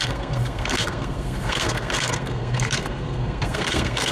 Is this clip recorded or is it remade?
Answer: remade